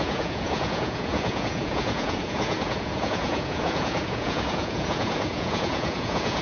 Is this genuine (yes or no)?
no